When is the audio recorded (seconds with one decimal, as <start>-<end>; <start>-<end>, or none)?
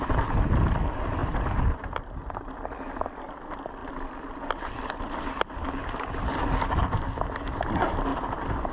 0.0-1.2; 1.9-8.1